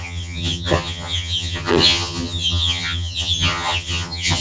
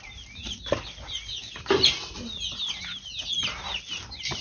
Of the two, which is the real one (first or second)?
second